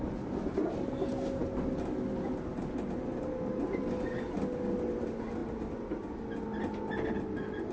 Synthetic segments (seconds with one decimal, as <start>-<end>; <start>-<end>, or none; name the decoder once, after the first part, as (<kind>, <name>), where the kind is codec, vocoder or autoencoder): none